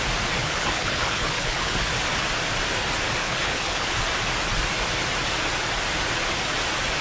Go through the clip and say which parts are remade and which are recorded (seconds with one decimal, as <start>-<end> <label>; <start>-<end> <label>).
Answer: 0.0-0.4 recorded; 0.4-1.9 remade; 1.9-3.2 recorded; 3.2-4.0 remade; 4.0-7.0 recorded